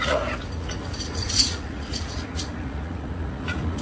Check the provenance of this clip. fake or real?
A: fake